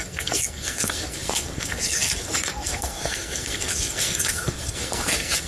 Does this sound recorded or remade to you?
remade